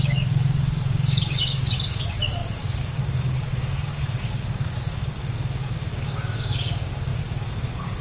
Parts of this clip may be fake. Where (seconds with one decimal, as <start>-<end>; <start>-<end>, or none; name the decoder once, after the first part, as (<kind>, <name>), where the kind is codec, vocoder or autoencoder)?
0.0-8.0 (codec, DAC)